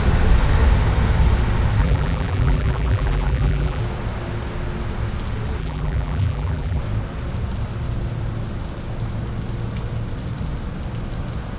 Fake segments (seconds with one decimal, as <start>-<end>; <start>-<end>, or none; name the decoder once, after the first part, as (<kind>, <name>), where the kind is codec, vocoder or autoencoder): 1.8-3.8 (vocoder, BigVGAN v2); 5.6-6.8